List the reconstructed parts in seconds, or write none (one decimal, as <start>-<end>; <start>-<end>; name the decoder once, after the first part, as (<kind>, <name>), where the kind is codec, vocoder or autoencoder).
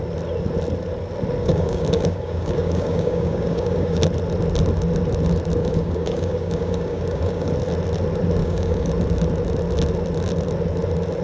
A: 1.4-4.0 (codec, DAC); 5.6-7.5; 8.4-8.9